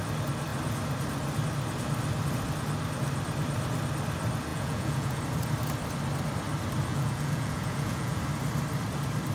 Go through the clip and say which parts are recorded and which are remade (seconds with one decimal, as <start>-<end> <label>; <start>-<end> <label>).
0.0-4.5 recorded; 4.5-5.2 remade; 5.2-6.9 recorded; 6.9-8.2 remade; 8.2-9.3 recorded

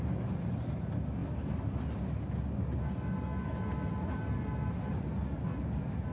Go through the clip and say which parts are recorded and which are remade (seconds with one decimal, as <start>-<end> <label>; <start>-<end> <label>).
0.0-6.1 recorded

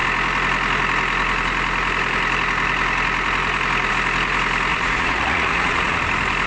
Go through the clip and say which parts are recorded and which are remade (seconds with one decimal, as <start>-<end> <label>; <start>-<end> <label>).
0.0-4.7 recorded; 4.7-6.0 remade; 6.0-6.5 recorded